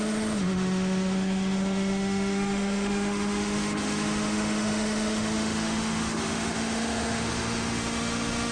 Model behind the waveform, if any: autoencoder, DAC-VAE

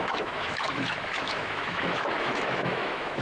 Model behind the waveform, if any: autoencoder, DAC-VAE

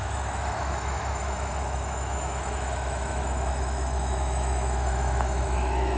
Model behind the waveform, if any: autoencoder, DAC-VAE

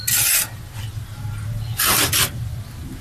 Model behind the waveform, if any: none